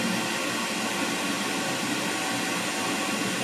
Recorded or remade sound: recorded